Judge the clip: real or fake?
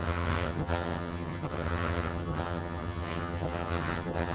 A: fake